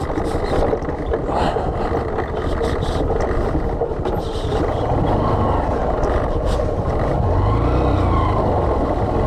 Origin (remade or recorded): recorded